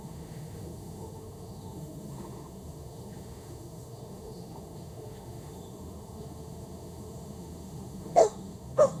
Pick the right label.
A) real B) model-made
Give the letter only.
B